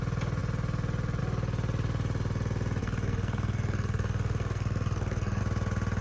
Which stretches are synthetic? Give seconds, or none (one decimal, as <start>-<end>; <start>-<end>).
2.8-5.4